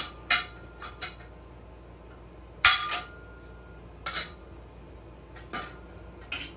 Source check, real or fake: real